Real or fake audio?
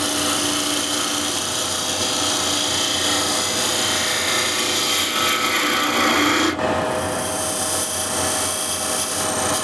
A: real